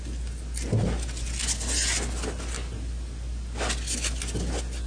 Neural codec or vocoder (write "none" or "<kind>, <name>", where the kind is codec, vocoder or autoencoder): none